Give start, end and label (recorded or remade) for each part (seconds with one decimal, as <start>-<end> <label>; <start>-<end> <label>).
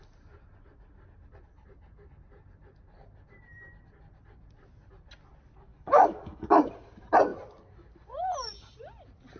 0.0-5.7 recorded; 5.7-6.7 remade; 6.7-9.4 recorded